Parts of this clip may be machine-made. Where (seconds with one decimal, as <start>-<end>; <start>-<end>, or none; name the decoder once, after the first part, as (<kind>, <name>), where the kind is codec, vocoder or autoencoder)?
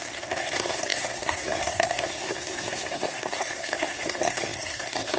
0.0-5.2 (codec, SNAC)